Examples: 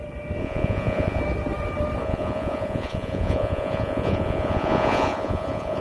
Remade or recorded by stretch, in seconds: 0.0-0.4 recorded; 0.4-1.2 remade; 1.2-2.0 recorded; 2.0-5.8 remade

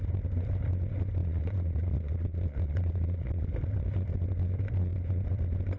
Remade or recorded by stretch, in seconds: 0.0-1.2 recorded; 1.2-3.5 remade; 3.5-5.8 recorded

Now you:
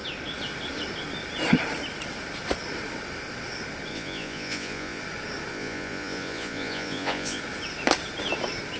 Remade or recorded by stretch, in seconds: 0.0-3.9 recorded; 3.9-5.0 remade; 5.0-5.5 recorded; 5.5-7.4 remade; 7.4-8.8 recorded

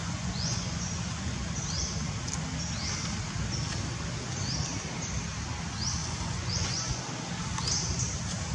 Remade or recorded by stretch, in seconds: 0.0-1.5 remade; 1.5-6.0 recorded; 6.0-7.0 remade; 7.0-8.5 recorded

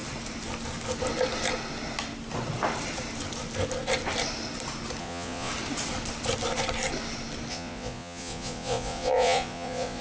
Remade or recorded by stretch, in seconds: 0.0-5.0 recorded; 5.0-5.5 remade; 5.5-7.5 recorded; 7.5-10.0 remade